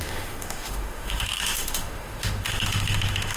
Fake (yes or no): yes